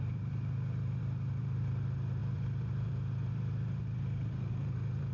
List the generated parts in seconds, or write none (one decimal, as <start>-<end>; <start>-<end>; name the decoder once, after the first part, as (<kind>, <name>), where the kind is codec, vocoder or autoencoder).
0.0-5.1 (vocoder, BigVGAN v2)